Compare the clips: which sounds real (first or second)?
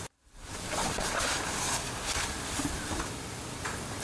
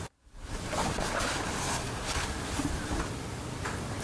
second